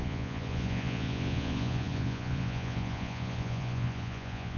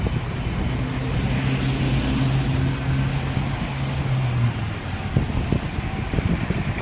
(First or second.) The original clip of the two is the second